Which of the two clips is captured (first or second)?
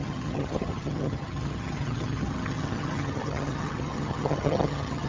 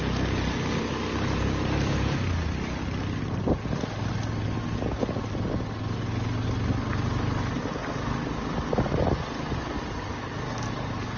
second